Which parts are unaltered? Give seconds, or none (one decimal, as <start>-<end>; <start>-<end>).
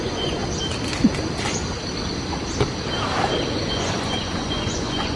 0.4-3.5